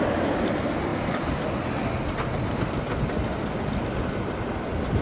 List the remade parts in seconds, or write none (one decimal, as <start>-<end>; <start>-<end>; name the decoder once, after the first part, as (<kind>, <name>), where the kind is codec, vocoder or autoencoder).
none